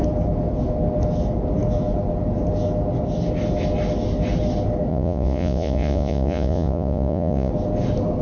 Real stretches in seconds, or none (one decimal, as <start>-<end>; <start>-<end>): 0.0-4.9; 7.5-8.2